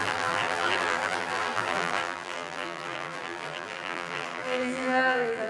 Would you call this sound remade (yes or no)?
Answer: yes